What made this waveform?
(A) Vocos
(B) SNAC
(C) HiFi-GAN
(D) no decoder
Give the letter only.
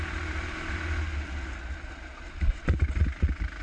D